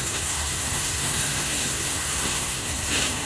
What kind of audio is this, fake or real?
fake